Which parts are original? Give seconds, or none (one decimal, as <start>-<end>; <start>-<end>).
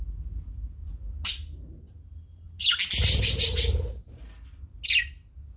0.0-3.0; 4.5-5.6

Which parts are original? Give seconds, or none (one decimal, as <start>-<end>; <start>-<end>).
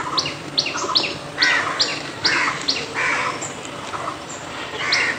0.0-1.9; 2.4-4.1; 4.8-5.2